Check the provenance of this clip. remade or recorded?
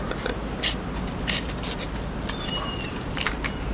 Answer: recorded